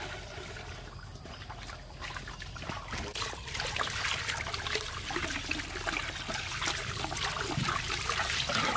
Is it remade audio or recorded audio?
recorded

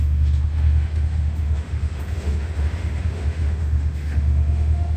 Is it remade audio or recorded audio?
remade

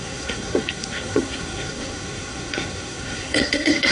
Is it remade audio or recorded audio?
remade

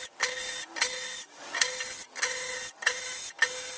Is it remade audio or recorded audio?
recorded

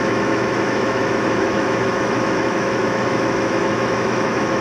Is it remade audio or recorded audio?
remade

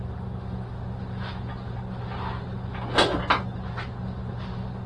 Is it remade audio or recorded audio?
recorded